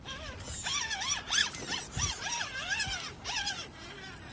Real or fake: real